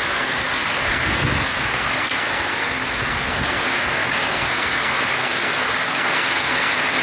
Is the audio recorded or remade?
remade